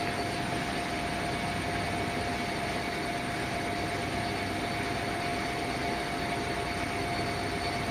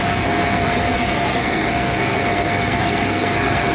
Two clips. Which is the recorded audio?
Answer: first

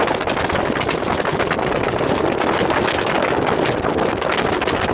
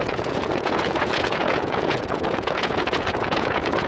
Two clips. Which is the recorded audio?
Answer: first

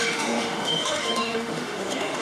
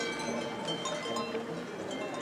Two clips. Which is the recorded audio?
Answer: second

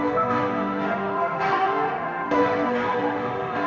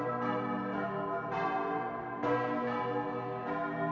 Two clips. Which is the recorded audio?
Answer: second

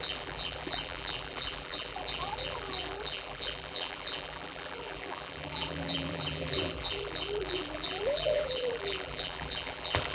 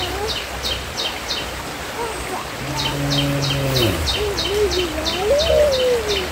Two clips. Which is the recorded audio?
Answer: second